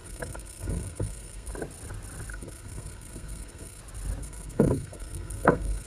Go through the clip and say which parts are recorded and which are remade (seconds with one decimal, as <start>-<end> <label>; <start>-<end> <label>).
0.0-1.5 remade; 1.5-2.3 recorded; 2.3-3.8 remade; 3.8-4.2 recorded; 4.2-5.9 remade